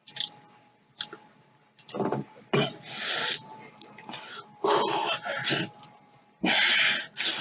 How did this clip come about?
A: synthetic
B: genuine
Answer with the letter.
B